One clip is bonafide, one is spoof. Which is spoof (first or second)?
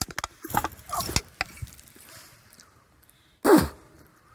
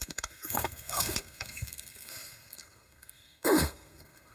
second